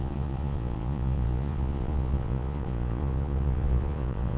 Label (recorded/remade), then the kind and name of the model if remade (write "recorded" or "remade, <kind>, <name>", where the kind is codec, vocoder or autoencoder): remade, vocoder, Vocos